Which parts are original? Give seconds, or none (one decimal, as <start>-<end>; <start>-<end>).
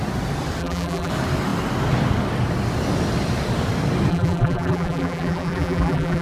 0.0-0.6; 1.1-4.1